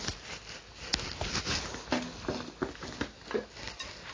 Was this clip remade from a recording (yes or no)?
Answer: no